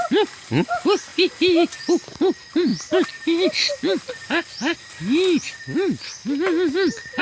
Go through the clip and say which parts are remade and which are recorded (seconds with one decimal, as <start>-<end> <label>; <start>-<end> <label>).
0.0-7.2 recorded